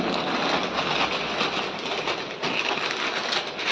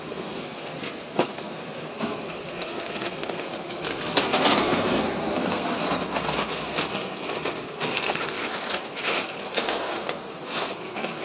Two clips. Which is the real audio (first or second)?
first